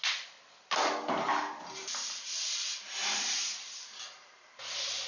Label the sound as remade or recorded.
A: recorded